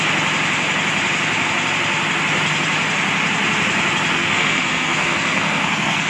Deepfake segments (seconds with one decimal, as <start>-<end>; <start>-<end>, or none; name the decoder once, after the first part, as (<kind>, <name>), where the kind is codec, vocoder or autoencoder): 4.1-6.1 (codec, SNAC)